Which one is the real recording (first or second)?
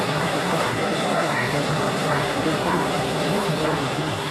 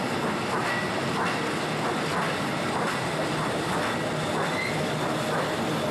second